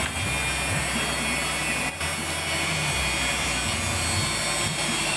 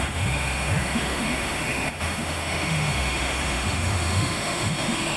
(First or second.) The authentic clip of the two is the first